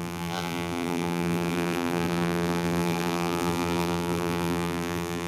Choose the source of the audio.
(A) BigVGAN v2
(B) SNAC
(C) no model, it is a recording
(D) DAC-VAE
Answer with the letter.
A